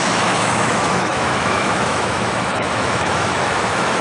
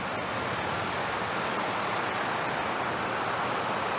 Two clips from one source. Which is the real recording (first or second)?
second